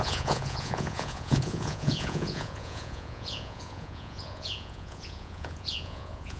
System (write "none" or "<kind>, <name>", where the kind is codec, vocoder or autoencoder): vocoder, Vocos